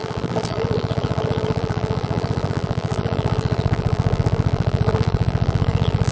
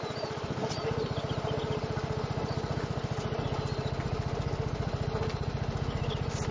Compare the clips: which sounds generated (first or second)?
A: first